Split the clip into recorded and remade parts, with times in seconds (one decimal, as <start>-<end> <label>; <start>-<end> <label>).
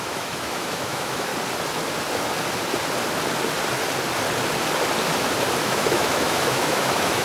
0.0-1.3 remade; 1.3-5.6 recorded; 5.6-7.2 remade